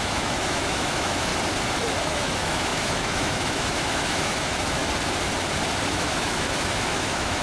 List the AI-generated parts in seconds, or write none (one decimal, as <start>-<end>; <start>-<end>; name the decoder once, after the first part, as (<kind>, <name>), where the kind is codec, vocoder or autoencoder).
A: 0.0-1.3 (autoencoder, DAC-VAE); 2.0-4.8; 5.9-7.4